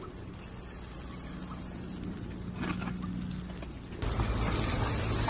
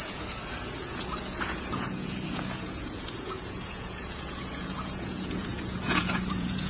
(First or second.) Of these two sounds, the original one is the first